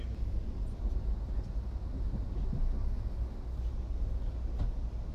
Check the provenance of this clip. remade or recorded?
recorded